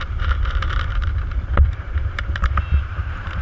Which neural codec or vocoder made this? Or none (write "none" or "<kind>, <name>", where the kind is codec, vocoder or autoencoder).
vocoder, BigVGAN v2